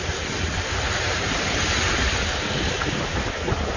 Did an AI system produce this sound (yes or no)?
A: no